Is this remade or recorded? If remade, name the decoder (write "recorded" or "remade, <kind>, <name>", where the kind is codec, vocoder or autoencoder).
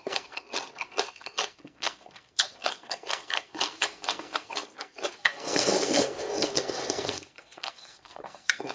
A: remade, codec, SNAC